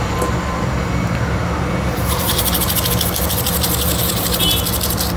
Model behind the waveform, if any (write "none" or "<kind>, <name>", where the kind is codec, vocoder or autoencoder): none